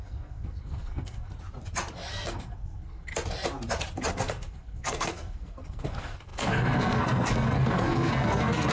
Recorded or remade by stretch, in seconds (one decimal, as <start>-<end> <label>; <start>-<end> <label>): 0.0-1.3 remade; 1.3-2.1 recorded; 2.1-3.1 remade; 3.1-4.1 recorded; 4.1-8.7 remade